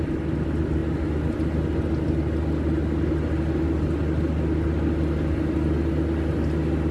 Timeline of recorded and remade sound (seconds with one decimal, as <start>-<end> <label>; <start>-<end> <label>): 0.0-6.9 recorded